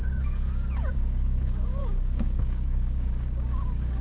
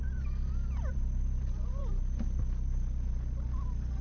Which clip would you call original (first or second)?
second